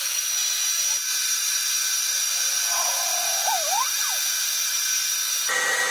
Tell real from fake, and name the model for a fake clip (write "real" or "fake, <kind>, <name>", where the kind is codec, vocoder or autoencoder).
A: real